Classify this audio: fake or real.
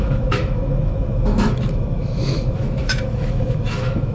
fake